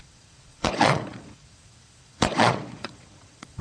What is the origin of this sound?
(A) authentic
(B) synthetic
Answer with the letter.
B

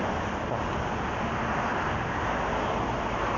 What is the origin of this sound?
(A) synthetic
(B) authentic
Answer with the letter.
B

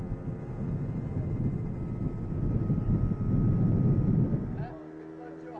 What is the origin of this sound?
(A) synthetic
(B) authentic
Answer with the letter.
B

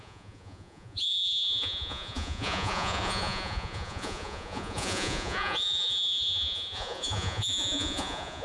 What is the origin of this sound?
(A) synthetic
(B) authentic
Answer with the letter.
A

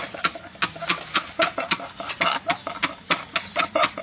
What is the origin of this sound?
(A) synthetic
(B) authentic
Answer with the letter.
B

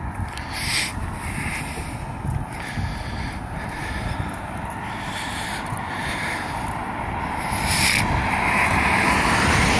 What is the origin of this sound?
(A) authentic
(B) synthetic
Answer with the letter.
A